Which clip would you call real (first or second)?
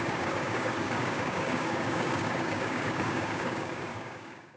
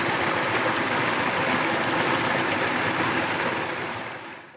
second